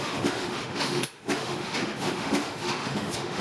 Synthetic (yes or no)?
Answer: yes